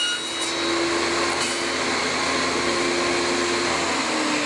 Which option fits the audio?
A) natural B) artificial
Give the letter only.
A